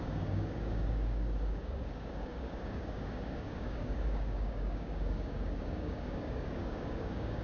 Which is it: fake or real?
fake